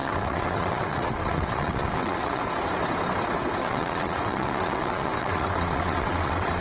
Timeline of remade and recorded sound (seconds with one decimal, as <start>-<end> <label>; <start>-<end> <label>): 0.0-2.4 remade; 2.4-3.6 recorded; 3.6-6.6 remade